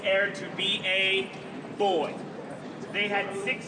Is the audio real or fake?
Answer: real